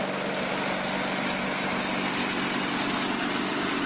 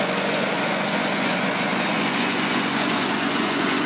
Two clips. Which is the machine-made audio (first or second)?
second